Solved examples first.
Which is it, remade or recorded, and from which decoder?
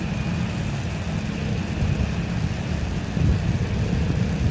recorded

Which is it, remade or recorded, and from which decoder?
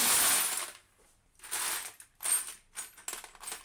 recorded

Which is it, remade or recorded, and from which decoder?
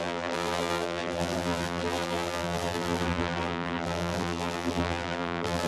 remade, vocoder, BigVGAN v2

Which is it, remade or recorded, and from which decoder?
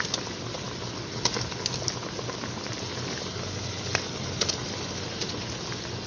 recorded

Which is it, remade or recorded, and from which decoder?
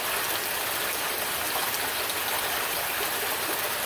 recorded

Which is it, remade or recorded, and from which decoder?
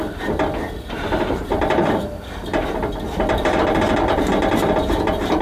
remade, vocoder, BigVGAN v2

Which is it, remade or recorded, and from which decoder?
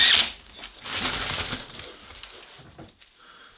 remade, vocoder, BigVGAN v2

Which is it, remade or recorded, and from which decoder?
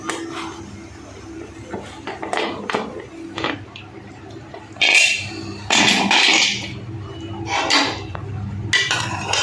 recorded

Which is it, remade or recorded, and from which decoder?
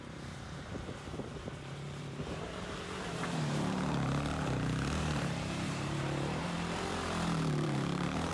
remade, vocoder, BigVGAN v2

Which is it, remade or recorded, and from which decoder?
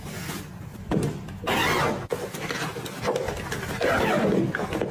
recorded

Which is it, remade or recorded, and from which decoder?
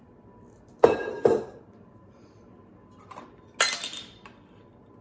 recorded